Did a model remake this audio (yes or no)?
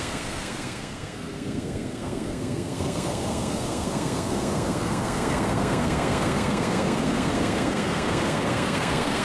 yes